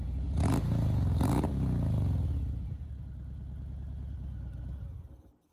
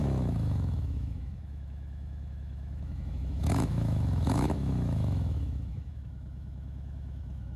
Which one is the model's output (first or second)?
second